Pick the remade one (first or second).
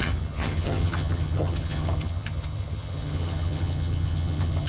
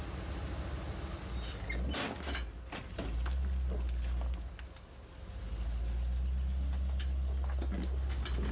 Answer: first